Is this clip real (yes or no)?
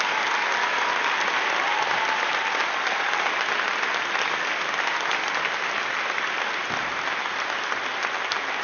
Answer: yes